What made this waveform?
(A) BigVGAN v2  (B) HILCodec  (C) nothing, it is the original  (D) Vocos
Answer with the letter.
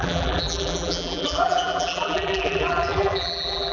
A